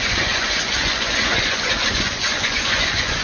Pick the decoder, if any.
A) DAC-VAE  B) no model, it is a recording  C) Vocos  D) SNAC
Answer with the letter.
C